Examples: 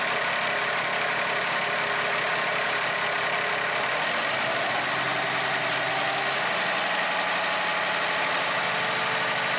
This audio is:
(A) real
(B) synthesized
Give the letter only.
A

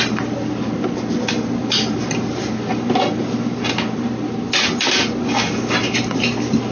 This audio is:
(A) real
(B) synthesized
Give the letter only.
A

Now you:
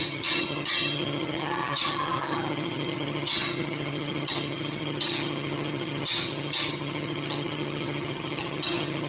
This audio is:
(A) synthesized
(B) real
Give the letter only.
A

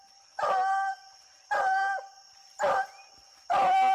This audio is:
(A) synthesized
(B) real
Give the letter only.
B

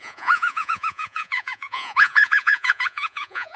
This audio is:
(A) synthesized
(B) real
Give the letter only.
A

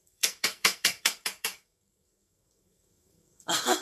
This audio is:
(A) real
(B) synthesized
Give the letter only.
B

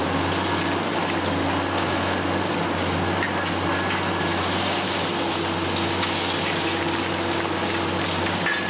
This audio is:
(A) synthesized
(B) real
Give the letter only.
B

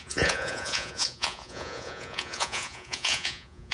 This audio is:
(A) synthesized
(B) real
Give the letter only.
A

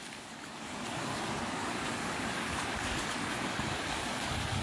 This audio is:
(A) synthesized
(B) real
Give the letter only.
A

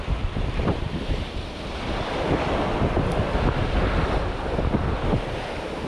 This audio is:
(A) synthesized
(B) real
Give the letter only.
B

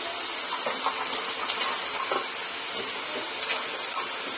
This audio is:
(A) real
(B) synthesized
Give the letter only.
A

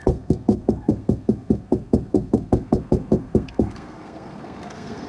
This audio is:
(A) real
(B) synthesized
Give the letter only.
B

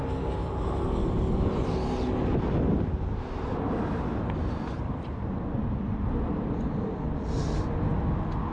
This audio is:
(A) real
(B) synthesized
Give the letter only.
A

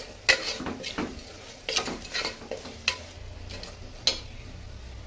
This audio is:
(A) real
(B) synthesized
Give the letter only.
A